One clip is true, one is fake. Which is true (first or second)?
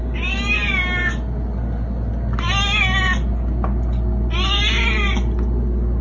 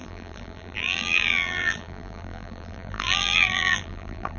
first